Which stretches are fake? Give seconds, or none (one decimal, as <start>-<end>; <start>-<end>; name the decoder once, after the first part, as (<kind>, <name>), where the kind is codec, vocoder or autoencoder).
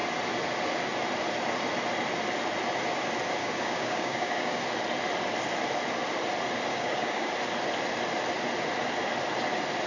3.4-4.6 (codec, DAC); 6.7-7.3